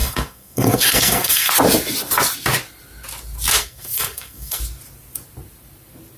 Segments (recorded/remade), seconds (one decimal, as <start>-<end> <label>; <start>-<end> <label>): 0.0-1.5 remade; 1.5-3.6 recorded; 3.6-4.6 remade; 4.6-6.2 recorded